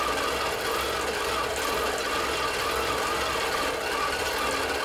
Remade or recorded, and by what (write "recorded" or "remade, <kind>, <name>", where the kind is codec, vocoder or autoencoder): recorded